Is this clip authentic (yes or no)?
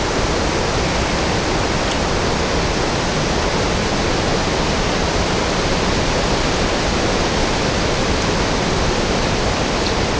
yes